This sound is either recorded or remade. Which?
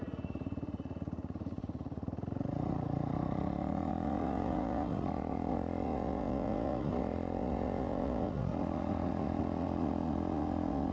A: remade